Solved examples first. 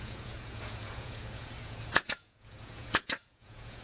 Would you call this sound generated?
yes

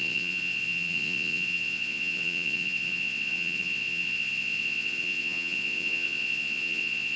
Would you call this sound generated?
yes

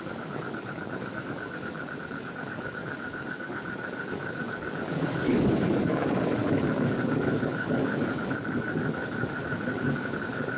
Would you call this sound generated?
yes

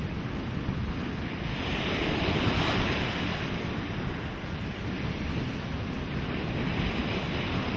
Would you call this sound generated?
no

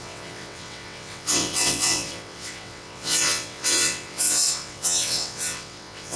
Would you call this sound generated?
yes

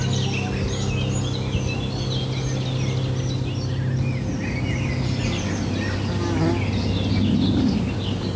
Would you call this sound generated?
no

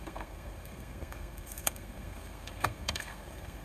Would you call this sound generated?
yes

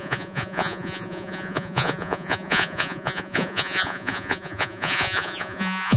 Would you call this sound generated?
yes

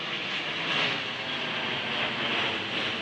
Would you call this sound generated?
no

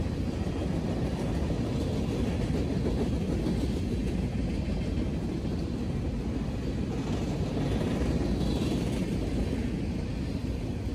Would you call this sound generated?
no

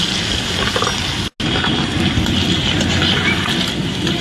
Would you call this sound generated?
no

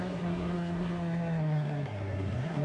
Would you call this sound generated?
yes